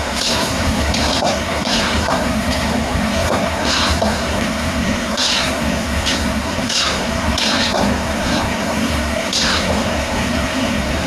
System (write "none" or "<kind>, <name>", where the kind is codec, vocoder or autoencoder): codec, SNAC